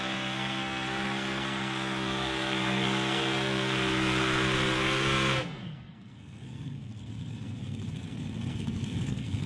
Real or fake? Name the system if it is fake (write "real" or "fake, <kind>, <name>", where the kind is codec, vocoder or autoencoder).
fake, codec, SNAC